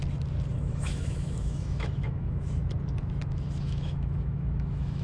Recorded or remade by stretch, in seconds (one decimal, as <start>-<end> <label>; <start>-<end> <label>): 0.0-0.5 recorded; 0.5-2.6 remade; 2.6-3.6 recorded; 3.6-5.0 remade